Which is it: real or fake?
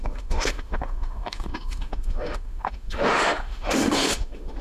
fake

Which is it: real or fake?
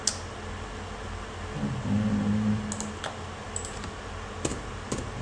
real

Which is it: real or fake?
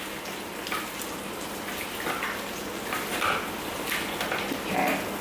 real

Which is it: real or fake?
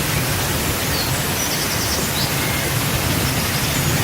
real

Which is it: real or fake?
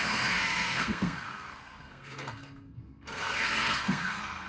fake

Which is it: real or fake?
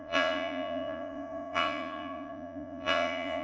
fake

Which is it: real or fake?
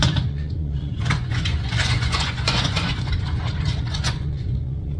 fake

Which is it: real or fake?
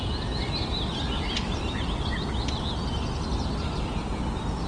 real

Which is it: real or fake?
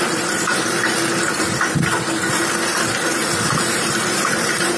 fake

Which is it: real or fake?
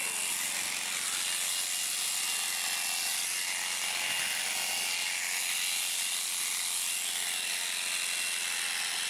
real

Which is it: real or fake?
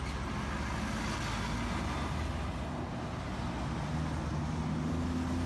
real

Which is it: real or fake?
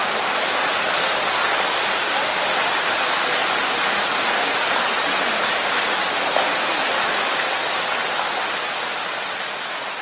real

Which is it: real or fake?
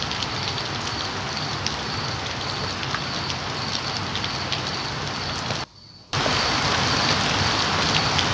real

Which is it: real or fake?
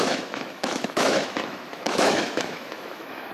fake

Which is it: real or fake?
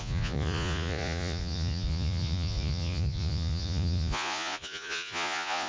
fake